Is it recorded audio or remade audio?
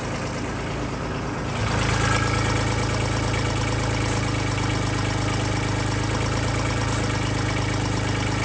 recorded